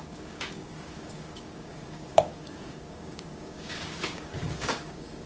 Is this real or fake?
fake